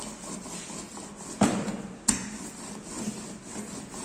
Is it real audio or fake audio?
real